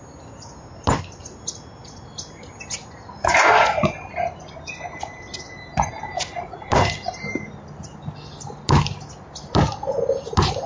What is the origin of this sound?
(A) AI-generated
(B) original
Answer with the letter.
B